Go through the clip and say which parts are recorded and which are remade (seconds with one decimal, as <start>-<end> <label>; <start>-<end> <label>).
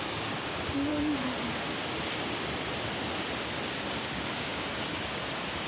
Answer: 0.0-0.9 remade; 0.9-4.0 recorded; 4.0-5.7 remade